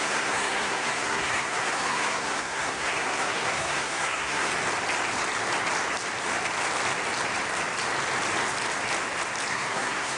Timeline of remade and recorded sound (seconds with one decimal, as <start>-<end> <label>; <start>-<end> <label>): 0.0-4.5 remade; 4.5-9.5 recorded; 9.5-10.2 remade